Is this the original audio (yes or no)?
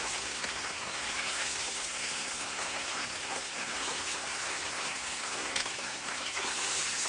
no